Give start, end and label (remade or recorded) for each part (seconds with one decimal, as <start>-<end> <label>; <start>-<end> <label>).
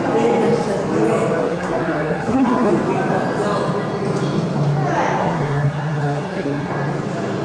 0.0-1.4 recorded; 1.4-2.7 remade; 2.7-5.2 recorded; 5.2-6.7 remade; 6.7-7.4 recorded